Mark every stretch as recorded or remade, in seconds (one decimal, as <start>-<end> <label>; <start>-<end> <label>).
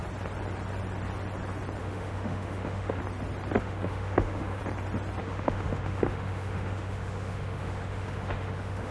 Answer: 0.0-1.8 recorded; 1.8-3.0 remade; 3.0-3.6 recorded; 3.6-4.6 remade; 4.6-5.2 recorded; 5.2-8.9 remade